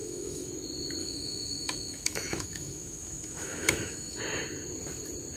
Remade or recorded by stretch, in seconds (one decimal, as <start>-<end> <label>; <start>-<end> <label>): 0.0-0.5 remade; 0.5-1.0 recorded; 1.0-4.2 remade; 4.2-5.4 recorded